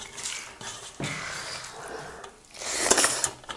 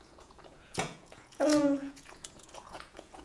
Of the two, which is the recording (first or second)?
first